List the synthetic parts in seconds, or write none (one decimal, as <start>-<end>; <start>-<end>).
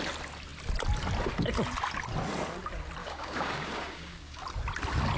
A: 3.0-4.4